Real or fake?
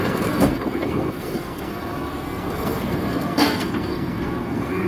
fake